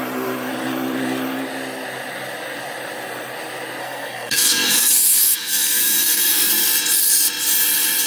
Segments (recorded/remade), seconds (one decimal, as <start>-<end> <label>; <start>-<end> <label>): 0.0-3.8 recorded; 3.8-6.5 remade; 6.5-8.1 recorded